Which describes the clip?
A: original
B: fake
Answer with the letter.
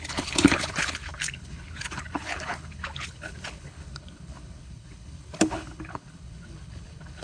B